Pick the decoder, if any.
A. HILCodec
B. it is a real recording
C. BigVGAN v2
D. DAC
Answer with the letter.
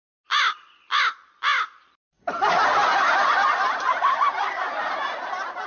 B